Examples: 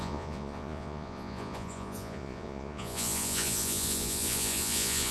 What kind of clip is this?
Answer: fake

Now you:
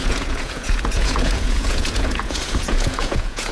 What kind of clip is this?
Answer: fake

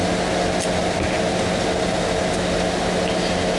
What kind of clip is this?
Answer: real